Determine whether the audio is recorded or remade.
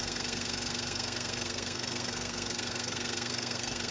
remade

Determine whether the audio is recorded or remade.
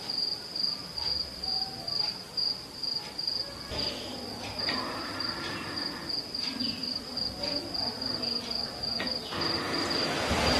recorded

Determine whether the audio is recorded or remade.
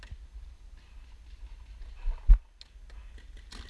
recorded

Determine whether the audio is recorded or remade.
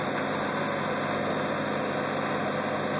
recorded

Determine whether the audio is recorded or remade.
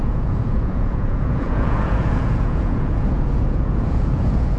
remade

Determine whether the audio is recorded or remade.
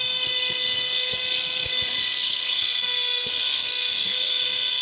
remade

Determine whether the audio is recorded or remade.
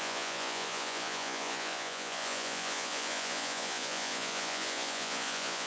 remade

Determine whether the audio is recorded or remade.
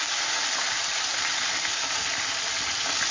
recorded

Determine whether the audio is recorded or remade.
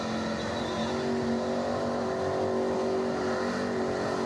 recorded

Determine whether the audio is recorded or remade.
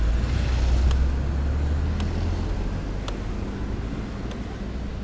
recorded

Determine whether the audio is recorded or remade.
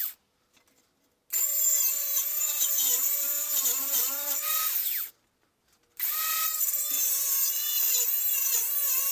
recorded